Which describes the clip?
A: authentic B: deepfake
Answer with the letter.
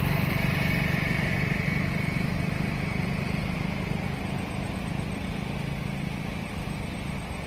A